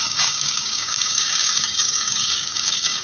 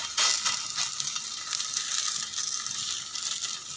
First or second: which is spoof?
first